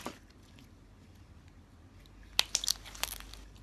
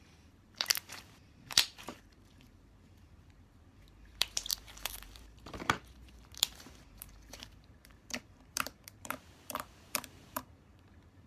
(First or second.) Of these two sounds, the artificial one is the second